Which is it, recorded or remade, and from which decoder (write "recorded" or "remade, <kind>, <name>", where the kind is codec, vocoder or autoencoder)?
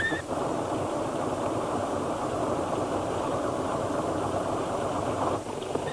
remade, vocoder, BigVGAN v2